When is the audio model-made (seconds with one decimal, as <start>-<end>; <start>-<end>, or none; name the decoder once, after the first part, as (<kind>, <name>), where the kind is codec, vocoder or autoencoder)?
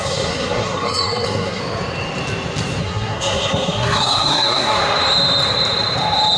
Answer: 0.0-1.6 (codec, SNAC); 2.8-4.8